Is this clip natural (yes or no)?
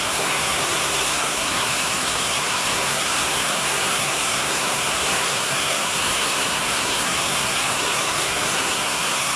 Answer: no